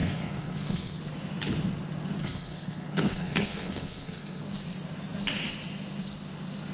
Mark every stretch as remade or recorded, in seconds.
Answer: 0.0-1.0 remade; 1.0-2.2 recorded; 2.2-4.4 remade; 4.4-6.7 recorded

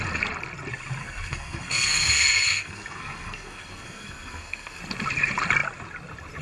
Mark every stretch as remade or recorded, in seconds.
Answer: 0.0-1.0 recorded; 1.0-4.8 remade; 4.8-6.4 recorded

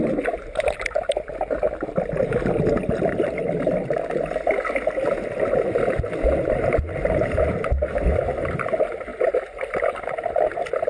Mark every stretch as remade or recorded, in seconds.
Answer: 0.0-10.9 recorded